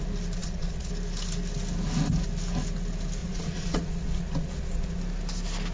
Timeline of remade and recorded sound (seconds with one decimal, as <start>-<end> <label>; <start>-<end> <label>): 0.0-0.4 recorded; 0.4-0.9 remade; 0.9-3.2 recorded; 3.2-5.0 remade; 5.0-5.7 recorded